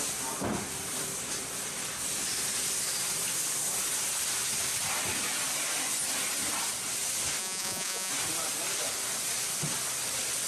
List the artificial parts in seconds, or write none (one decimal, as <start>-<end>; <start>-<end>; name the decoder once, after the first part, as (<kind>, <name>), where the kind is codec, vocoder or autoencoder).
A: 7.4-8.1 (vocoder, Vocos)